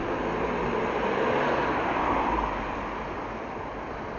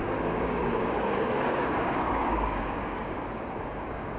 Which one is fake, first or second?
second